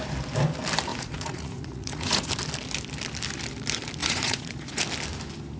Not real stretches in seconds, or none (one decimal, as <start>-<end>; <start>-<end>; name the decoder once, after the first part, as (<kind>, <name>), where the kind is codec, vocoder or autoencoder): 0.9-2.3 (vocoder, Vocos); 4.0-4.8